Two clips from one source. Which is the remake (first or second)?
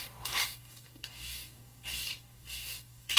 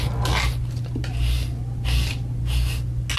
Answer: first